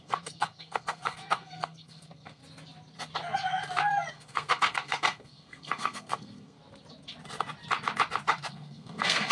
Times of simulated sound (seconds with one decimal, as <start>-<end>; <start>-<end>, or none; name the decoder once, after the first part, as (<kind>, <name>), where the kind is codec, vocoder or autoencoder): 0.0-2.4 (codec, SNAC); 4.1-6.6; 8.5-9.3